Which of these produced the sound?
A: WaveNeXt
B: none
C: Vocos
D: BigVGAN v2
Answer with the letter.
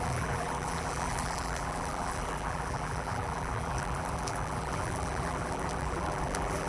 D